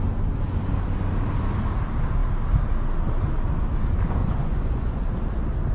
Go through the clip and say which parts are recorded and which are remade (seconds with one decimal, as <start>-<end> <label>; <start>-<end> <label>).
0.0-4.2 recorded; 4.2-5.0 remade; 5.0-5.7 recorded